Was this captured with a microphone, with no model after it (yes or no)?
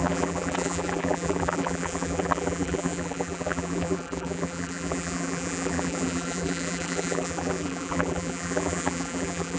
no